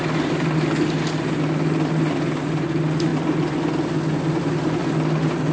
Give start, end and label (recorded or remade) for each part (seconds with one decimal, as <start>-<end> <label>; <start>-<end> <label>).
0.0-5.5 recorded